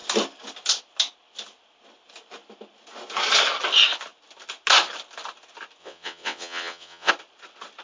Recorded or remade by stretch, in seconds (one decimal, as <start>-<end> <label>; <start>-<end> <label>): 0.0-5.8 recorded; 5.8-7.1 remade; 7.1-7.8 recorded